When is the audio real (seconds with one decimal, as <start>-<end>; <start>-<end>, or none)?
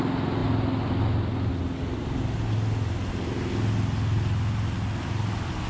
0.0-5.7